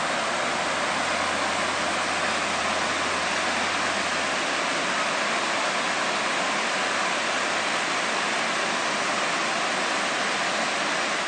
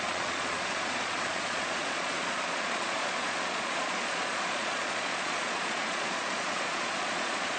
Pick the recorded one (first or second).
first